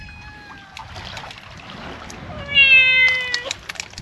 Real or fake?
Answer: real